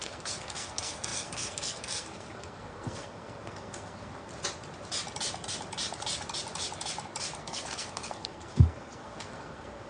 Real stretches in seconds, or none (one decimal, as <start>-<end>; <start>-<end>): 4.3-7.4